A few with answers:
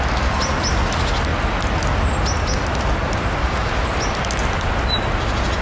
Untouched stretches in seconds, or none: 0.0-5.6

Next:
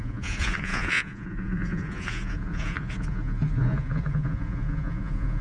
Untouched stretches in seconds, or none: none

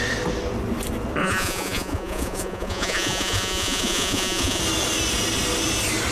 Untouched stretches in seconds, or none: 0.0-1.2; 4.6-6.1

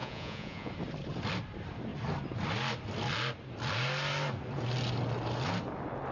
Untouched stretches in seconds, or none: 0.7-6.1

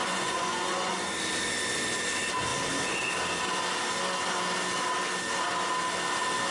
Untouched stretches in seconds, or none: 1.0-6.5

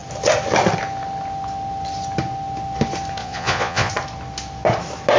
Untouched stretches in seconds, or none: 0.0-3.2; 3.9-5.2